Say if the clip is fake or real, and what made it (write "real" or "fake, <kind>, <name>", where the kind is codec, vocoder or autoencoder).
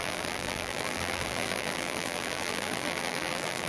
fake, vocoder, BigVGAN v2